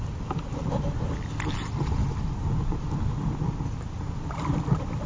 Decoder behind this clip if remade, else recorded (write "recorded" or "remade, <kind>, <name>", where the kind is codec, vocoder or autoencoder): recorded